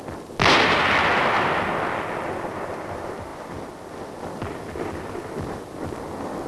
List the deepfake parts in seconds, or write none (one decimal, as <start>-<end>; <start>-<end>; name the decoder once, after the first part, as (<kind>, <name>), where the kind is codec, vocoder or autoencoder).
none